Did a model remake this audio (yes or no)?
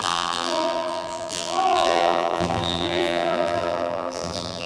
yes